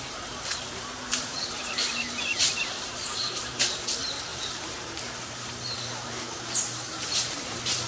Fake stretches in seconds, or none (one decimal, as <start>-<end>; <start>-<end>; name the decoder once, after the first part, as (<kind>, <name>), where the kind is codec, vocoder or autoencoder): 0.0-7.9 (vocoder, BigVGAN v2)